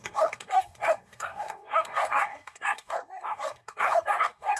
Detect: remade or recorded remade